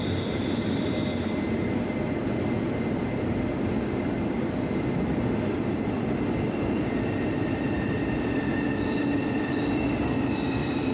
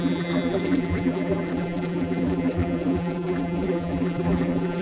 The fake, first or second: second